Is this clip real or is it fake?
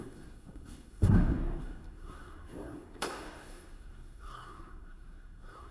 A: fake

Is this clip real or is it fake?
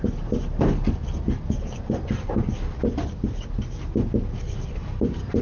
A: real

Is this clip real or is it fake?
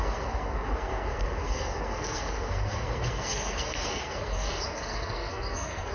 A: fake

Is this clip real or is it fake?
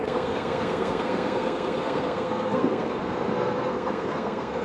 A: fake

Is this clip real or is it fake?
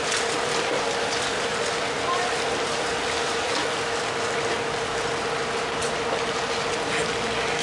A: real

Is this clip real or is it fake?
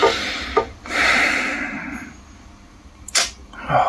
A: real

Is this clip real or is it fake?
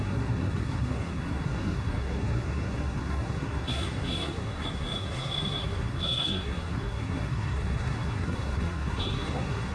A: fake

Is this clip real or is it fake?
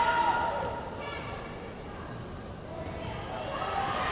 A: real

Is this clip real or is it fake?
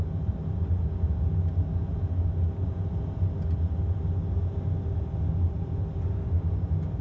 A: real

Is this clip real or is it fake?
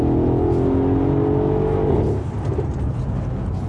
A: real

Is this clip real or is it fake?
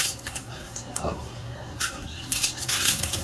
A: fake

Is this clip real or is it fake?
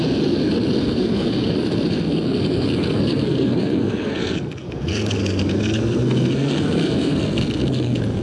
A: fake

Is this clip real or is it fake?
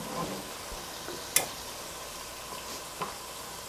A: real